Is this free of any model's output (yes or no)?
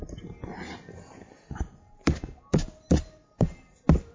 yes